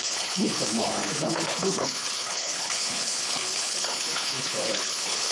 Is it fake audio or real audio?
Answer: fake